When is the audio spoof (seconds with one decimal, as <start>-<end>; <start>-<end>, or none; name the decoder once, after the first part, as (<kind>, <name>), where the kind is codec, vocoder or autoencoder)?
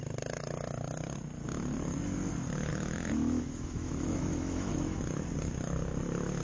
2.7-5.0 (autoencoder, DAC-VAE)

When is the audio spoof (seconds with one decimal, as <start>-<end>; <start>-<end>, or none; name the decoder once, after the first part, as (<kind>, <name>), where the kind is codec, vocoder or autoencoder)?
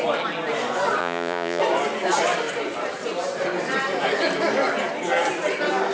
1.0-1.6 (vocoder, Vocos)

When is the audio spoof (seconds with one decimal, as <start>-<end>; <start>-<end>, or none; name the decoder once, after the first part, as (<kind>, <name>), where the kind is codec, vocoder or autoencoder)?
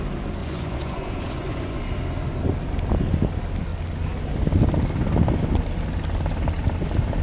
0.4-1.8 (vocoder, Vocos)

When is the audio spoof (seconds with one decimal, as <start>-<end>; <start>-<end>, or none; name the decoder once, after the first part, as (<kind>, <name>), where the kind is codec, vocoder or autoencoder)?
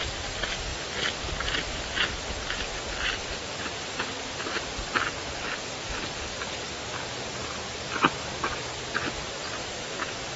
9.6-10.4 (autoencoder, DAC-VAE)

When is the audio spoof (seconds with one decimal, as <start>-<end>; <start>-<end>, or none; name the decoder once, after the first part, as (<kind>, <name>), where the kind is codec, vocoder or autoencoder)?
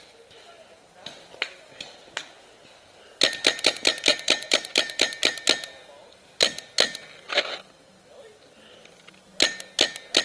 4.1-5.3 (vocoder, BigVGAN v2)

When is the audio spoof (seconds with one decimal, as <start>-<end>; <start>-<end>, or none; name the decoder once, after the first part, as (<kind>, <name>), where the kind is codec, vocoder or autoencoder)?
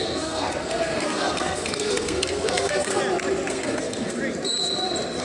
0.0-3.0 (codec, SNAC); 3.5-4.2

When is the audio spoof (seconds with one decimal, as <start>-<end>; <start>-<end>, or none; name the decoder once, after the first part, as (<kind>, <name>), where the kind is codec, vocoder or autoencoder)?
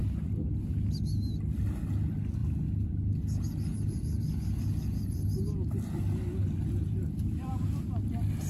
0.0-0.6 (vocoder, BigVGAN v2); 6.4-7.8